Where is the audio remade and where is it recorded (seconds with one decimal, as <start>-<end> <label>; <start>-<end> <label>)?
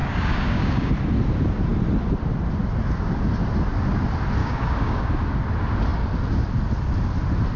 0.0-0.9 remade; 0.9-4.4 recorded; 4.4-5.1 remade; 5.1-7.6 recorded